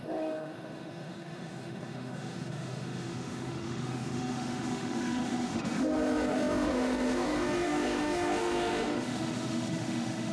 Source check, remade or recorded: remade